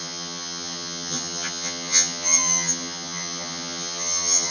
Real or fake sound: fake